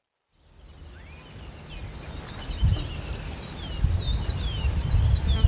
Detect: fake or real real